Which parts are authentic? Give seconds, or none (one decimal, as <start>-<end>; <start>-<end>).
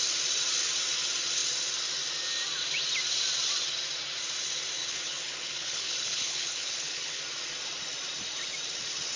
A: 0.0-4.8; 7.2-9.2